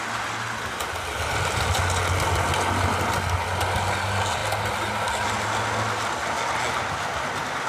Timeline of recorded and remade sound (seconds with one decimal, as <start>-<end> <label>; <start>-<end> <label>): 0.0-7.7 recorded